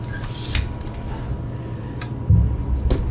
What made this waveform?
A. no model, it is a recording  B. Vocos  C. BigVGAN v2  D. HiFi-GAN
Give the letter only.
A